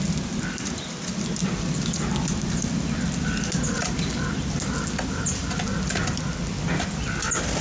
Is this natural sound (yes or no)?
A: yes